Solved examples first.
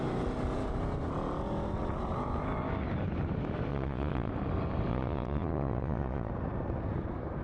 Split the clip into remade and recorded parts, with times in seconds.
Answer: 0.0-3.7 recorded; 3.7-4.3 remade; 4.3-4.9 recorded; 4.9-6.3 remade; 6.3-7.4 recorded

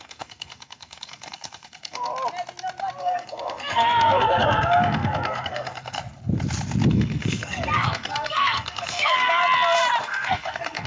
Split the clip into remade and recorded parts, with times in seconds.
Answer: 0.0-2.1 remade; 2.1-3.0 recorded; 3.0-6.0 remade; 6.0-6.9 recorded; 6.9-9.4 remade; 9.4-10.0 recorded; 10.0-10.9 remade

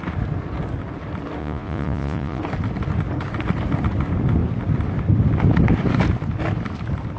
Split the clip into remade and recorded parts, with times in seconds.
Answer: 0.0-1.4 recorded; 1.4-2.4 remade; 2.4-7.2 recorded

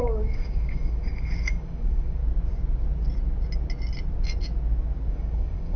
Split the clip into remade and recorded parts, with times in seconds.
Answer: 0.0-2.2 remade; 2.2-5.1 recorded; 5.1-5.8 remade

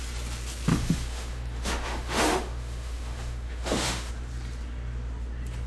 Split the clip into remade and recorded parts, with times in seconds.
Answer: 0.0-0.7 recorded; 0.7-4.1 remade; 4.1-5.7 recorded

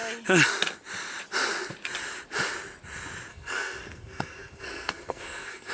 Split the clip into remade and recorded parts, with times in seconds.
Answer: 0.0-3.3 recorded; 3.3-5.7 remade

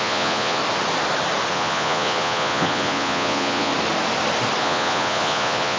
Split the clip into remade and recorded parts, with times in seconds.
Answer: 0.0-0.6 remade; 0.6-1.5 recorded; 1.5-3.7 remade; 3.7-4.6 recorded; 4.6-5.8 remade